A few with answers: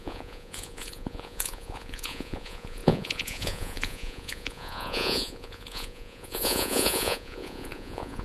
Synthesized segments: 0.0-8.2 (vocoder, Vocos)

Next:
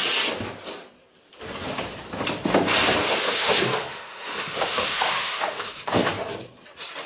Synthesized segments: 3.0-6.1 (autoencoder, DAC-VAE)

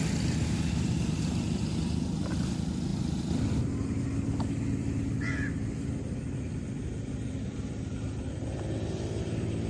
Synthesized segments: none

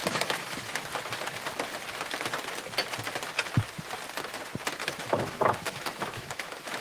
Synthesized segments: 0.0-0.8 (autoencoder, DAC-VAE); 4.8-6.8

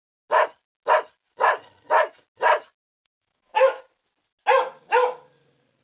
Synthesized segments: 3.0-3.8 (autoencoder, DAC-VAE)